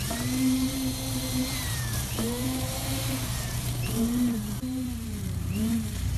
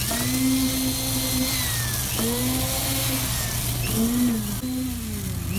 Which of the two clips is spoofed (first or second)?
first